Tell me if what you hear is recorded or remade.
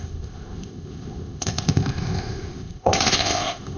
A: remade